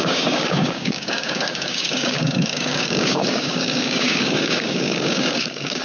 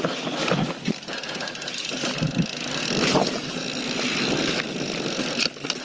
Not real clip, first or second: first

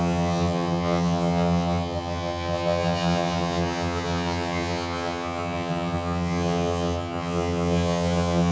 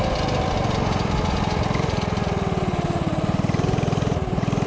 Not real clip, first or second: first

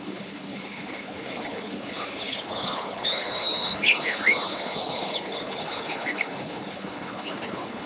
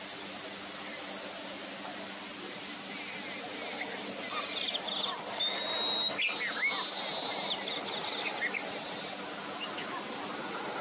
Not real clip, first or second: first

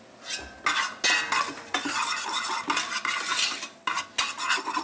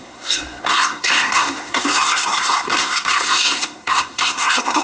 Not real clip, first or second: second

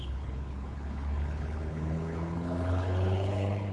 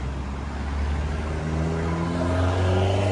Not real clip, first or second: first